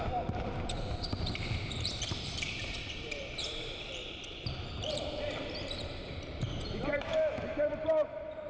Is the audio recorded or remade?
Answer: remade